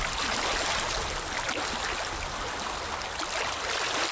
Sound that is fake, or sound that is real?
real